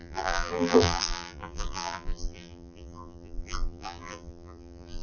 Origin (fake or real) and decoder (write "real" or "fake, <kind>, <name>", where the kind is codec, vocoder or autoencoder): fake, vocoder, BigVGAN v2